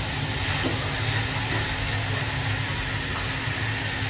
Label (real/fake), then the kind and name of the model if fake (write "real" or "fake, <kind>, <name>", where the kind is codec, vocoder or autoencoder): real